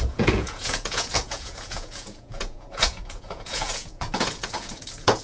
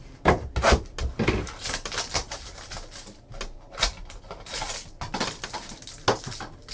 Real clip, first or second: second